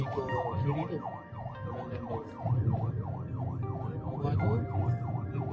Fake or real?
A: real